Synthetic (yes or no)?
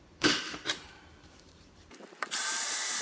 yes